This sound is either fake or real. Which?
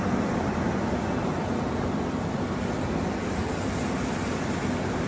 real